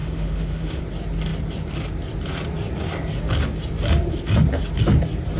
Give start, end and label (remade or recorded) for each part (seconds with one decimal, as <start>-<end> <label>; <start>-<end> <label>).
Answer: 0.0-0.8 remade; 0.8-5.4 recorded